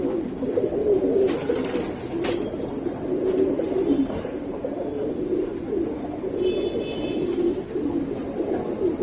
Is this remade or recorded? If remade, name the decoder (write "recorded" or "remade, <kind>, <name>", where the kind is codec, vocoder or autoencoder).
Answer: recorded